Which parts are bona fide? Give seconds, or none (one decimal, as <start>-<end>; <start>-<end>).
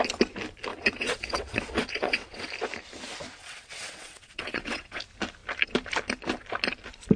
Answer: 0.0-0.7; 2.5-3.4; 5.0-7.2